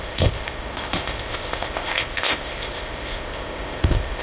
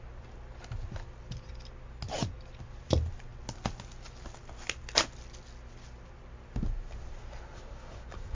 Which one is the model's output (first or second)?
first